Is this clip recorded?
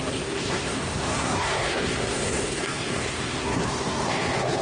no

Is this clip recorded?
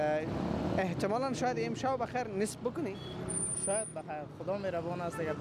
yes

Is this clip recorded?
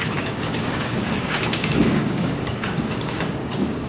no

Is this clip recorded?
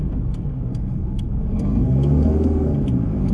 no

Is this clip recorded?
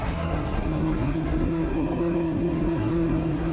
no